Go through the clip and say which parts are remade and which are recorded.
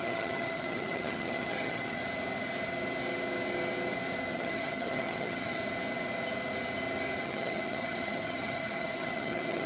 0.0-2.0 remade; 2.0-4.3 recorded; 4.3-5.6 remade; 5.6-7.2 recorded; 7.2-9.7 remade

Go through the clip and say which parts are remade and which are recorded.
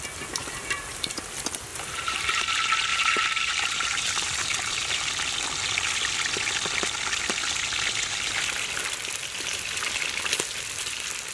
0.0-0.4 recorded; 0.4-1.2 remade; 1.2-1.7 recorded; 1.7-2.4 remade; 2.4-2.9 recorded; 2.9-5.1 remade; 5.1-11.3 recorded